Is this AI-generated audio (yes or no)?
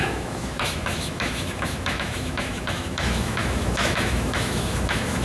yes